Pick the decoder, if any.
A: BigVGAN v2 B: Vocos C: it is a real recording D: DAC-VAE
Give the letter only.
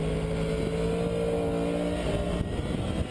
C